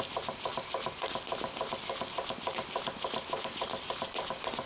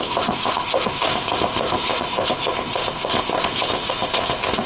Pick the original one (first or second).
first